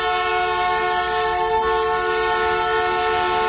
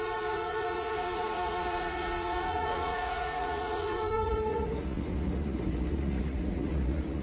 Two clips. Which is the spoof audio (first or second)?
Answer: second